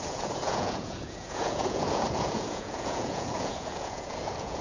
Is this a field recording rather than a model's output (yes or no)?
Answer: no